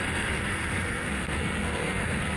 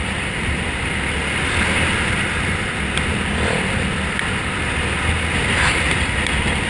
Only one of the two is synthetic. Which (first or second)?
first